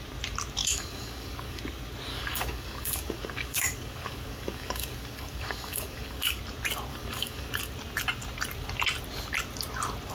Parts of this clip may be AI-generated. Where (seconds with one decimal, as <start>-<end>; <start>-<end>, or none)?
0.6-1.6; 2.1-6.4; 6.9-7.5